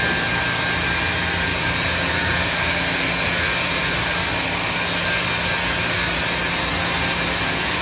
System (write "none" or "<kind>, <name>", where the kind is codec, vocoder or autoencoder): none